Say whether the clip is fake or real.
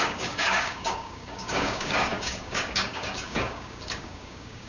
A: fake